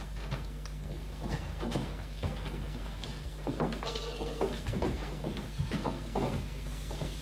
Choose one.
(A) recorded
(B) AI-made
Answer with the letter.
B